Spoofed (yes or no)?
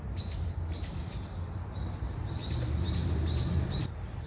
yes